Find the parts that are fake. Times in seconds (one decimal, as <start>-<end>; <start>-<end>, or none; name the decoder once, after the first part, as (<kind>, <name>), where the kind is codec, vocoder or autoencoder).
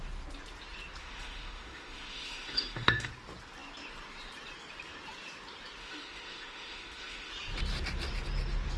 1.0-3.1 (autoencoder, DAC-VAE); 5.8-7.3